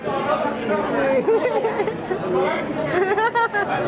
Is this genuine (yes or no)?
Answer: yes